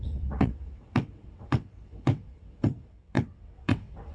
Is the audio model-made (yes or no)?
yes